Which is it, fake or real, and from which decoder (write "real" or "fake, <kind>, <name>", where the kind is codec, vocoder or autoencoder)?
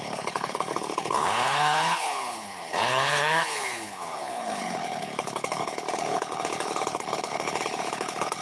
fake, codec, HILCodec